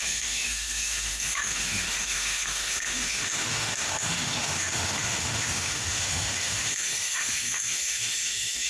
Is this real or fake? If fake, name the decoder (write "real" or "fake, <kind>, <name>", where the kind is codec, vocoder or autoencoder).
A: fake, autoencoder, DAC-VAE